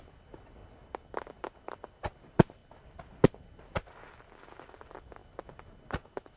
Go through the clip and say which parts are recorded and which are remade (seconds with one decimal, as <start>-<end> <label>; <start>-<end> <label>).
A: 0.0-0.6 remade; 0.6-1.3 recorded; 1.3-2.6 remade; 2.6-4.1 recorded; 4.1-5.2 remade; 5.2-5.9 recorded; 5.9-6.4 remade